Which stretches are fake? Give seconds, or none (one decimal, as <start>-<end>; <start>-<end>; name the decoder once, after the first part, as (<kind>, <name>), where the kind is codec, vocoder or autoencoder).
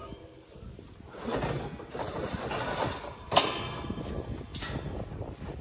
none